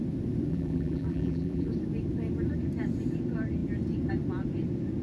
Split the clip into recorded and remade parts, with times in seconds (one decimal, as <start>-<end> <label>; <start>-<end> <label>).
0.0-0.5 recorded; 0.5-1.7 remade; 1.7-5.0 recorded

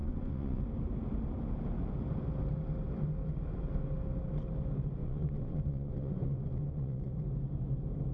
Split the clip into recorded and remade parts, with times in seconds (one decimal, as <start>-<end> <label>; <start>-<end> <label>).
0.0-0.6 remade; 0.6-5.0 recorded; 5.0-7.1 remade; 7.1-8.1 recorded

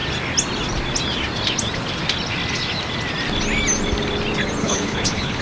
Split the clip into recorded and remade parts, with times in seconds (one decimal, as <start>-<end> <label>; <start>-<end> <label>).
0.0-4.6 recorded; 4.6-5.4 remade

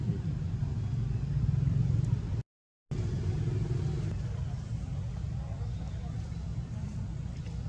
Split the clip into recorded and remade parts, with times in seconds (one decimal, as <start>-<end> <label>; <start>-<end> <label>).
0.0-7.7 recorded

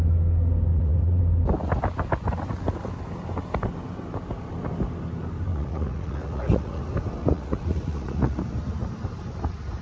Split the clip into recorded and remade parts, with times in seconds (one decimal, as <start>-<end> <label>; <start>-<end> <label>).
0.0-0.7 recorded; 0.7-1.2 remade; 1.2-5.5 recorded; 5.5-6.8 remade; 6.8-7.2 recorded; 7.2-8.4 remade; 8.4-9.8 recorded

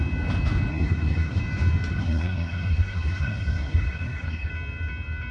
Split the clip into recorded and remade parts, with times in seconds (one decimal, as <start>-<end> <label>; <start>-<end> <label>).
0.0-0.7 recorded; 0.7-1.4 remade; 1.4-1.9 recorded; 1.9-4.5 remade; 4.5-5.3 recorded